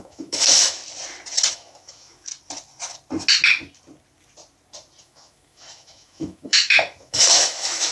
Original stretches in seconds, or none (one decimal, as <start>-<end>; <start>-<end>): 0.8-1.5; 2.3-5.0